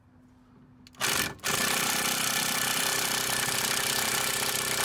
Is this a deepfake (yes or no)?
no